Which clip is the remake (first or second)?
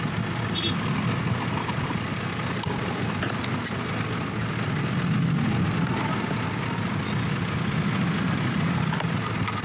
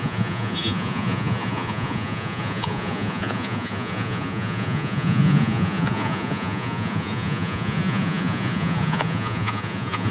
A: second